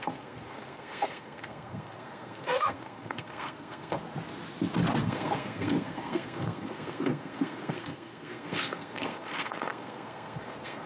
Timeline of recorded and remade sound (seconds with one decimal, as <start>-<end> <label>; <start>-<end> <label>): 0.0-4.0 remade; 4.0-5.0 recorded; 5.0-10.9 remade